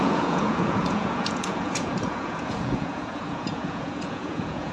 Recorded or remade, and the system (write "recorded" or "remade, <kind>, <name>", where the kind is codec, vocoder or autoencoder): remade, vocoder, Vocos